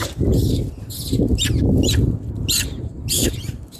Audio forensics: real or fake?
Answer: fake